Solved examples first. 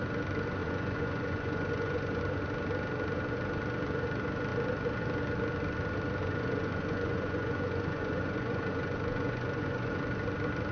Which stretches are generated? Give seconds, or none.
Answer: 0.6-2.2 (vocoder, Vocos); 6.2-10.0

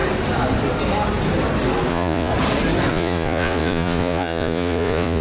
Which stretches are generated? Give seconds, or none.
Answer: 1.9-2.3 (vocoder, Vocos); 2.9-5.2

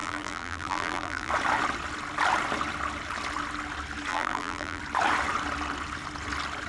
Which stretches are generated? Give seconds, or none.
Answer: 0.0-1.3 (vocoder, BigVGAN v2); 4.1-4.8

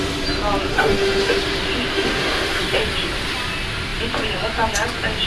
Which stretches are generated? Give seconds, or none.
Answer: 0.7-1.3 (autoencoder, DAC-VAE); 1.9-2.6